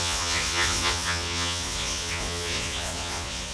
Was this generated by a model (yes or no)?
yes